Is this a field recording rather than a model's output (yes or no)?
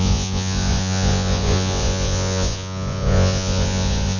no